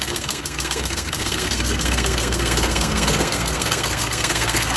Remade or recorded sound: remade